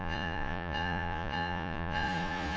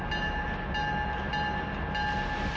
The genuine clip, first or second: second